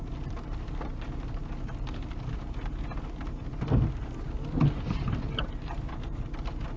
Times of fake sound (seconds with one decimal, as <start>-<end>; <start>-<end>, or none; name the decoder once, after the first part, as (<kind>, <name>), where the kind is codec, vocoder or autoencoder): none